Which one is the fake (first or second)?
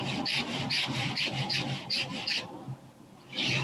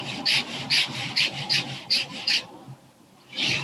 second